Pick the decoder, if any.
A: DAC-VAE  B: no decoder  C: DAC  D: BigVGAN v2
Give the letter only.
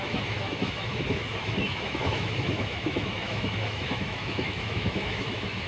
A